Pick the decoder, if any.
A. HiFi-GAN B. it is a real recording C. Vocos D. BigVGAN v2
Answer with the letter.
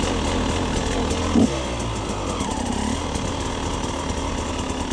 B